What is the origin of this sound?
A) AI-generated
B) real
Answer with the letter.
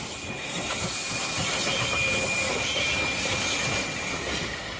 B